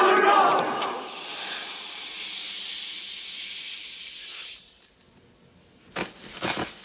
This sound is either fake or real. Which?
real